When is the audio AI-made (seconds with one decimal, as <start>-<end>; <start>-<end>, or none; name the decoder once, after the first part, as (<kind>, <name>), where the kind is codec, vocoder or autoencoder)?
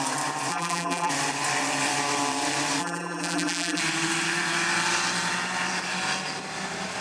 0.5-1.1 (vocoder, BigVGAN v2); 2.8-3.8